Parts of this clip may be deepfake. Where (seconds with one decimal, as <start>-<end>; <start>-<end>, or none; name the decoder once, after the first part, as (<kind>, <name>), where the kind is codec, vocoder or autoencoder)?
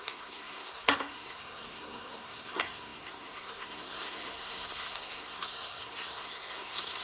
0.0-7.0 (codec, SNAC)